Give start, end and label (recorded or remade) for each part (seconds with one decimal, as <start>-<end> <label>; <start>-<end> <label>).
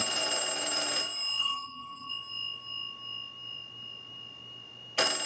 0.0-1.4 recorded; 1.4-2.1 remade; 2.1-5.3 recorded